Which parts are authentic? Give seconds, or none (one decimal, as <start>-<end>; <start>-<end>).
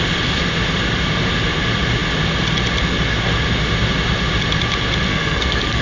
0.0-5.1